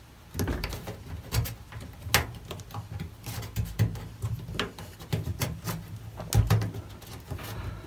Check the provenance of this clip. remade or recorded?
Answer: recorded